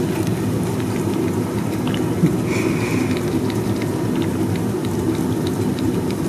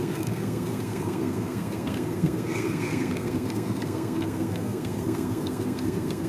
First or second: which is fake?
second